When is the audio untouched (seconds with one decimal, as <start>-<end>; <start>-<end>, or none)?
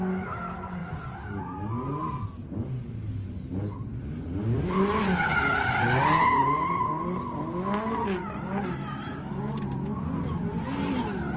0.0-8.8; 9.4-11.4